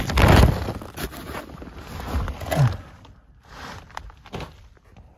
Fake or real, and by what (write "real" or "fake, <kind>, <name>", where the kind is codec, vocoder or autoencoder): real